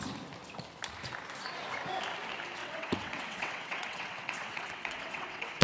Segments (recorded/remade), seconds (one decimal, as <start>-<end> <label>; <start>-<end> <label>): 0.0-2.6 recorded; 2.6-5.6 remade